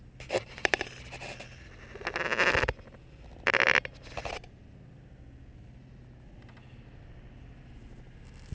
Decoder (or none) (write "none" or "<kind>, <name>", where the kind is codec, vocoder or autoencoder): none